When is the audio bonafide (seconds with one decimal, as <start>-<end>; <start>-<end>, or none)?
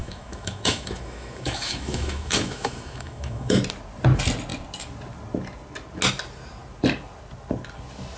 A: 3.6-8.2